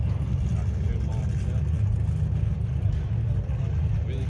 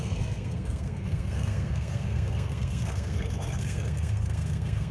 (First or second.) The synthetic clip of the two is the second